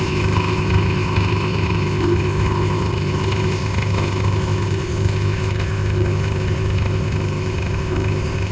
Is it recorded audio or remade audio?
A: remade